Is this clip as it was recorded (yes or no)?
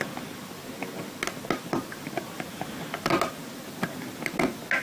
yes